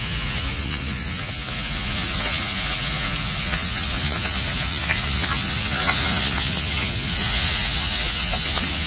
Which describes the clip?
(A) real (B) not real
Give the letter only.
B